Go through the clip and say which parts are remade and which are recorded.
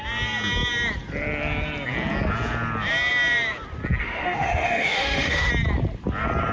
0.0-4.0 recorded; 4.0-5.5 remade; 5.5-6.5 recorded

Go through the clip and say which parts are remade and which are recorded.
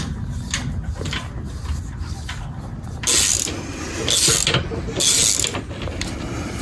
0.0-6.6 recorded